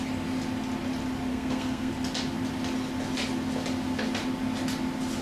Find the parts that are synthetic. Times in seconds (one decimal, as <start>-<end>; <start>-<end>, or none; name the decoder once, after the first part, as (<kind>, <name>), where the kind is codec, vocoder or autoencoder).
1.3-1.9 (codec, SNAC)